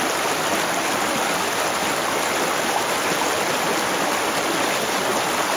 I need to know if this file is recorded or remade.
recorded